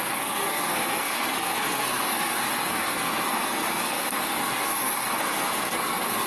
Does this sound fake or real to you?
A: fake